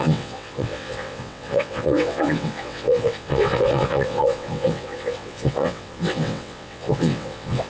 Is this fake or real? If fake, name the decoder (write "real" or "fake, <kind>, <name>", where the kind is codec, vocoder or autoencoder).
fake, vocoder, WaveNeXt